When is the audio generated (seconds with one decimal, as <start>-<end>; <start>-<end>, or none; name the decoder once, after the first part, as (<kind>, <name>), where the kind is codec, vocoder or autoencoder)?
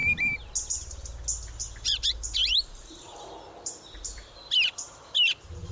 none